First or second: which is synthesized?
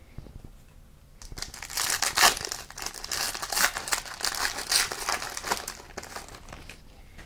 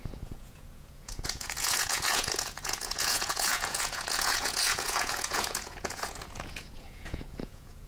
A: second